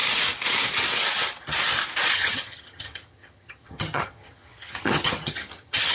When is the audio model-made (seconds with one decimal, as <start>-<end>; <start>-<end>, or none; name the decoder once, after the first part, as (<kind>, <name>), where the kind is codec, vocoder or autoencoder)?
2.1-5.9 (vocoder, HiFi-GAN)